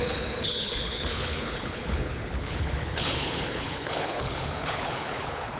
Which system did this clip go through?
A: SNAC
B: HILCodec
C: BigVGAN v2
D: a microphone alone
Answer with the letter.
B